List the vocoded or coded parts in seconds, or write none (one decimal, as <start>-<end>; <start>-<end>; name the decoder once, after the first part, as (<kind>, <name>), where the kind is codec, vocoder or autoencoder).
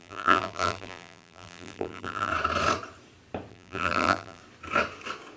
0.0-2.3 (vocoder, BigVGAN v2); 3.5-4.4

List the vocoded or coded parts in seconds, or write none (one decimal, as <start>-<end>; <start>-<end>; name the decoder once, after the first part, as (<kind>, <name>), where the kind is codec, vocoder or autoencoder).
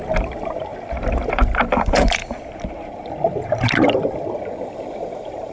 0.0-0.7 (vocoder, BigVGAN v2); 1.3-2.2; 5.1-5.5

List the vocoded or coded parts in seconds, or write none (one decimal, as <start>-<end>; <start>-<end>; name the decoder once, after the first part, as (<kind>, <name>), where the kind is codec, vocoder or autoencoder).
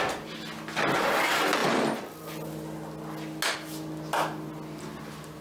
none